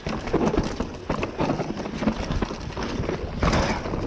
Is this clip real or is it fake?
real